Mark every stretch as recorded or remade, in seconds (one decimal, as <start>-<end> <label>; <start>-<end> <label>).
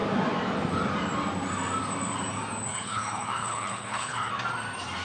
0.0-2.7 recorded; 2.7-4.3 remade; 4.3-5.0 recorded